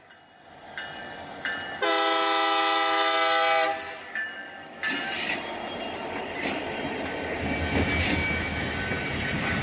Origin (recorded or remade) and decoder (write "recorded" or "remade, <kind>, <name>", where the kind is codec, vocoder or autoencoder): recorded